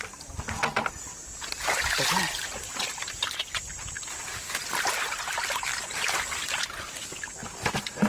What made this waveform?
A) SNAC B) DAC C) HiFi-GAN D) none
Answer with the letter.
D